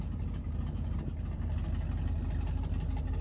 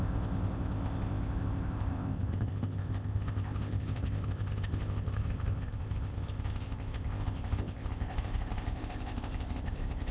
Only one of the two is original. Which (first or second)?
first